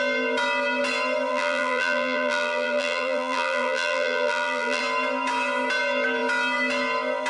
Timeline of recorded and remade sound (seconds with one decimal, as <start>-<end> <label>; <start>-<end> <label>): 0.0-1.3 recorded; 1.3-4.8 remade; 4.8-7.3 recorded